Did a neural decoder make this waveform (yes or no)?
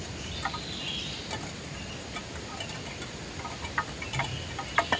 no